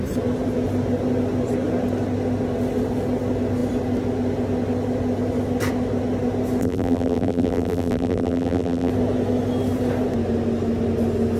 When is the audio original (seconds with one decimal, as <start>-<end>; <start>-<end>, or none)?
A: 0.0-6.6; 8.9-11.4